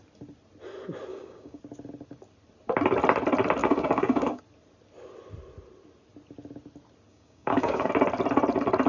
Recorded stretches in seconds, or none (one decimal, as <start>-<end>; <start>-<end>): 0.0-1.1; 1.6-3.6; 4.4-7.1; 7.9-8.9

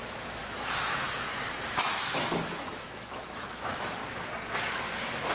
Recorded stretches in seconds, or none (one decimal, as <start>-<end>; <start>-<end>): 4.0-5.3

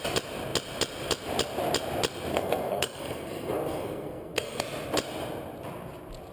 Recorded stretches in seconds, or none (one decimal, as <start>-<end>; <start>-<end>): 0.0-2.3; 4.6-6.3

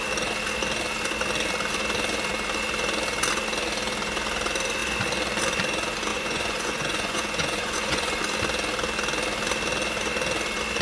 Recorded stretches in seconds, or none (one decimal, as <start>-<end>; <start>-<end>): 0.0-6.1; 8.2-10.8

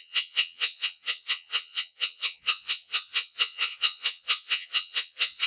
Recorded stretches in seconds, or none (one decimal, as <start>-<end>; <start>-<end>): none